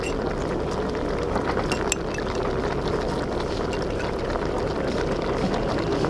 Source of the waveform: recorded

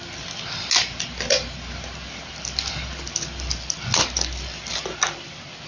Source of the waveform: recorded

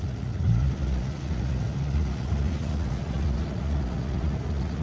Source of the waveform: remade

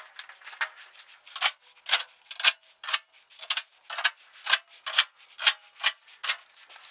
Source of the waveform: recorded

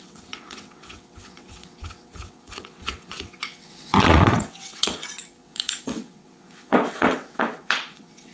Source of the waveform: remade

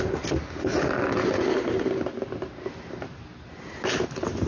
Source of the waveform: recorded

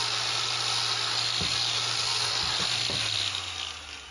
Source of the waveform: recorded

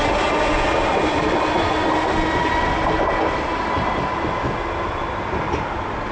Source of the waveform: recorded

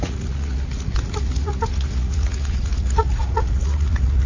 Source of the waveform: remade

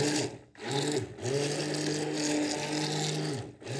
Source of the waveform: recorded